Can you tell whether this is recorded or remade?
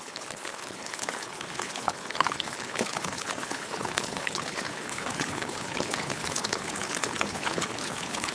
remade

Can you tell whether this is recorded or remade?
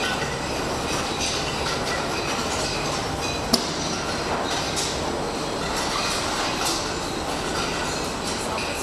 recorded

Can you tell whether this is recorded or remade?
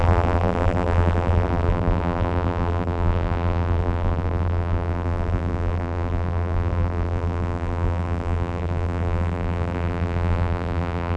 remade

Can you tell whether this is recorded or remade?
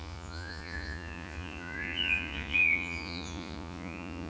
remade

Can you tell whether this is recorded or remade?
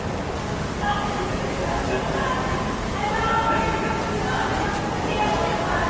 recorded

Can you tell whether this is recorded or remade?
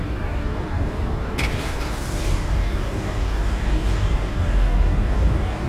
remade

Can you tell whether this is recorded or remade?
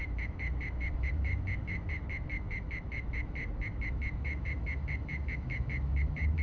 remade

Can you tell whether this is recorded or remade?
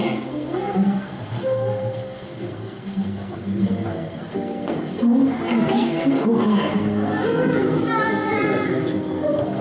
remade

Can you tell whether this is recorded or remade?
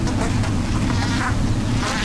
recorded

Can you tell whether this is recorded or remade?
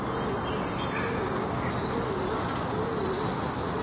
recorded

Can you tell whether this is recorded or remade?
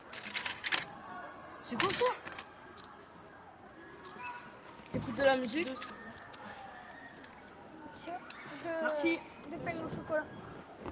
recorded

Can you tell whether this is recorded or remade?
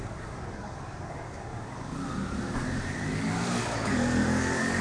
remade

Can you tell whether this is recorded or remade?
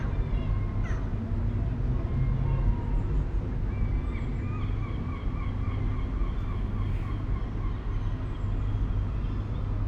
recorded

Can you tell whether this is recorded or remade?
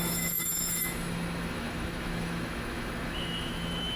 remade